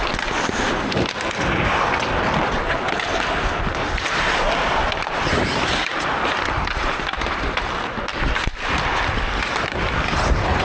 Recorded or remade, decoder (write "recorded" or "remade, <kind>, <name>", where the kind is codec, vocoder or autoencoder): remade, vocoder, BigVGAN v2